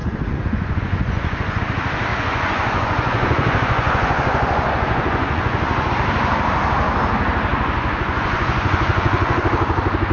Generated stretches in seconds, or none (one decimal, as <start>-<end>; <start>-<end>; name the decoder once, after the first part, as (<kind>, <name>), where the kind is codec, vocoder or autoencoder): 0.0-1.6 (vocoder, Vocos); 2.1-5.9; 7.5-9.4